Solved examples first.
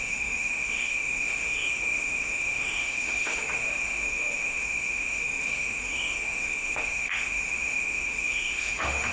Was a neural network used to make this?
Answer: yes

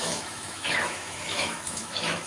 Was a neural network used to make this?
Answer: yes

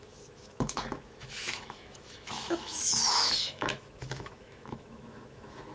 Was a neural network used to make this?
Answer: yes